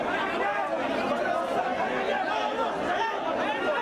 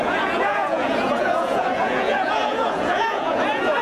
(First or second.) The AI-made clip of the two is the second